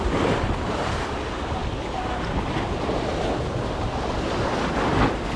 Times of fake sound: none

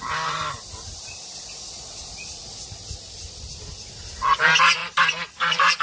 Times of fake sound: none

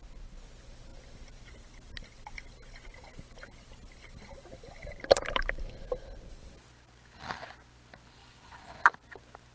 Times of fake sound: 8.2-8.8 (vocoder, Vocos)